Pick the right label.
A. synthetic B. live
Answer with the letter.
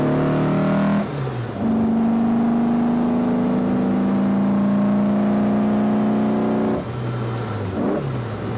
B